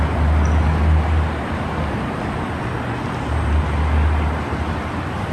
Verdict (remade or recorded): recorded